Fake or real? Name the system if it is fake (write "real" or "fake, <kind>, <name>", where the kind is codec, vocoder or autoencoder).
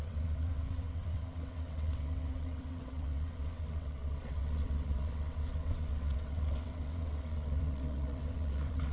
fake, vocoder, WaveNeXt